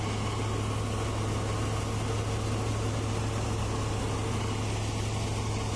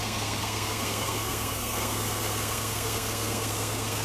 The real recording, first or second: first